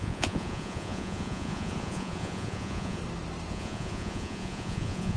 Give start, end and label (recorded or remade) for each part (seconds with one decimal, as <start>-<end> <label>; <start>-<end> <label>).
0.0-3.0 remade; 3.0-3.5 recorded; 3.5-5.2 remade